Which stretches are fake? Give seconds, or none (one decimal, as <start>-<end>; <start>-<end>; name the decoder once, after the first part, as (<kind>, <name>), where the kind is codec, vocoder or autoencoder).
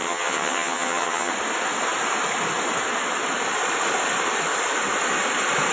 0.0-1.3 (vocoder, HiFi-GAN)